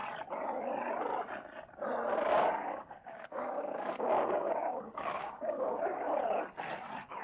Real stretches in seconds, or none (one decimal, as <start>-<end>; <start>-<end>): 0.0-2.3; 5.8-7.2